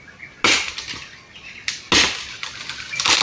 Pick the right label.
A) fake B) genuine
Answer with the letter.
B